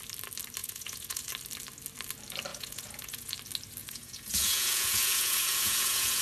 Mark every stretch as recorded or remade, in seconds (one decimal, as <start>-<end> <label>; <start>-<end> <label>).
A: 0.0-0.6 recorded; 0.6-1.3 remade; 1.3-2.5 recorded; 2.5-3.3 remade; 3.3-3.8 recorded; 3.8-6.2 remade